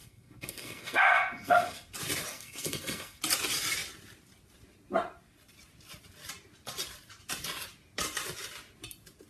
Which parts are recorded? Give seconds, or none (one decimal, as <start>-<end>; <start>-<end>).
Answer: 1.9-2.3; 3.2-9.3